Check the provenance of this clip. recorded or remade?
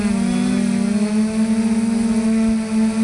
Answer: recorded